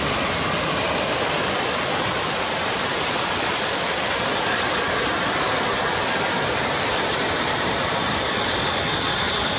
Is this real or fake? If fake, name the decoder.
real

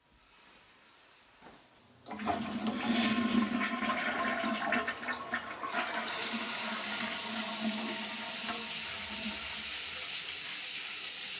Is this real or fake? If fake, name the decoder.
real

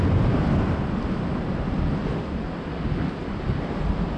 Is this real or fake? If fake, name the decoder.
real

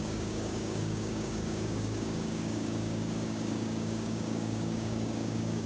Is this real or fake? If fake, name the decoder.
fake, codec, DAC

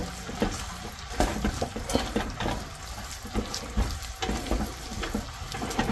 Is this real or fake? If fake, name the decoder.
real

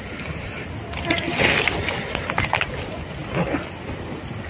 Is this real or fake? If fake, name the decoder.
real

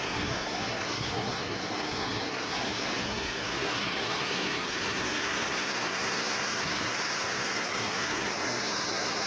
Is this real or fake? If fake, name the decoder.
fake, codec, SNAC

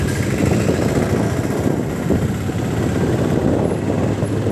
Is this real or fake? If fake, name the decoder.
real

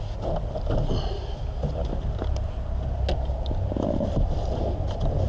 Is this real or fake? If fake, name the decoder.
real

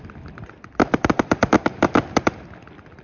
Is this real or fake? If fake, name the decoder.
real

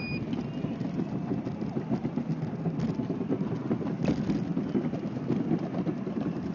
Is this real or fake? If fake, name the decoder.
real